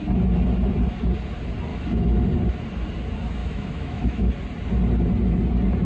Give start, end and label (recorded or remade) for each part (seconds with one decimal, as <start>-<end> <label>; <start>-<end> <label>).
0.0-1.7 recorded; 1.7-2.2 remade; 2.2-3.4 recorded; 3.4-4.3 remade; 4.3-5.8 recorded